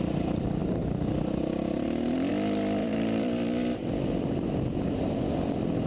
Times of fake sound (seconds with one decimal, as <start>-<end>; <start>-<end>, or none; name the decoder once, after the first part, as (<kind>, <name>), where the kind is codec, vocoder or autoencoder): 2.8-5.2 (vocoder, BigVGAN v2)